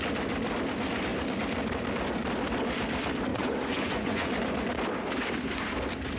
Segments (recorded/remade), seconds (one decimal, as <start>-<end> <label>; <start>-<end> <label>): 0.0-3.3 recorded; 3.3-4.3 remade; 4.3-6.2 recorded

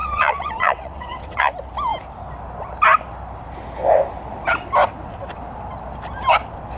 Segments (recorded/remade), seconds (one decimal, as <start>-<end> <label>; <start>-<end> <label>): 0.0-1.5 remade; 1.5-6.8 recorded

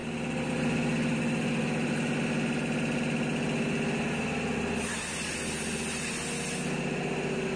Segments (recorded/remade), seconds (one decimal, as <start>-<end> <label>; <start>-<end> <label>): 0.0-7.6 recorded

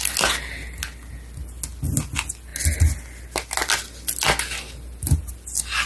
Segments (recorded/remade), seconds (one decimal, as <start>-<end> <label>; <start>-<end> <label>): 0.0-5.9 recorded

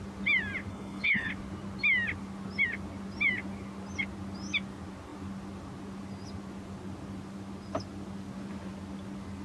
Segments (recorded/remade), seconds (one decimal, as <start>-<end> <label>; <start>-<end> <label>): 0.0-0.7 recorded; 0.7-1.3 remade; 1.3-9.4 recorded

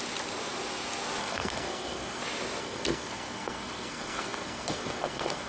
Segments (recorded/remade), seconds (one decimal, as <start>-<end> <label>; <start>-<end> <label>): 0.0-1.2 recorded; 1.2-2.2 remade; 2.2-2.6 recorded; 2.6-5.5 remade